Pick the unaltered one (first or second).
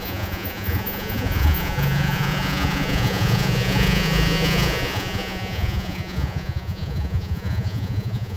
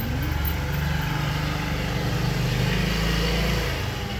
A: second